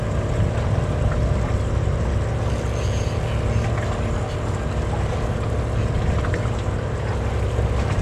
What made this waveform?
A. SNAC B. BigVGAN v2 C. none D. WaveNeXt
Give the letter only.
C